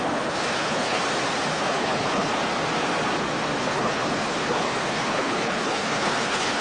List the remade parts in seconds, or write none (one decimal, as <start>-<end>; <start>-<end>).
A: 0.0-1.0; 1.5-2.3; 3.6-6.6